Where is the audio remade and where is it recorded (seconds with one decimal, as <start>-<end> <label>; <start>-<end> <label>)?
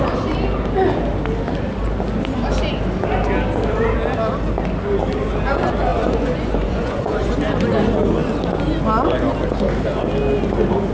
0.0-5.9 recorded; 5.9-7.3 remade; 7.3-10.9 recorded